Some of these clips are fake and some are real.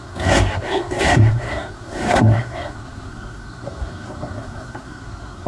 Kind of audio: fake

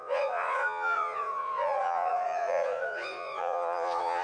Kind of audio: fake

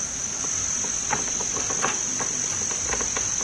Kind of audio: real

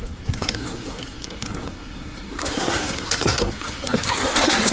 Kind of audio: fake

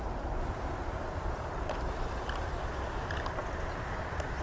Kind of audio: fake